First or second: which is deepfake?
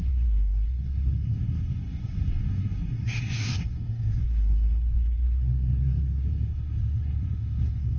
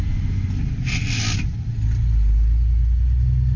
first